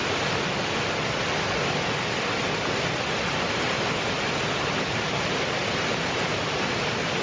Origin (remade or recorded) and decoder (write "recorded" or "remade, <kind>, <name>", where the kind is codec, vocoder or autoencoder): recorded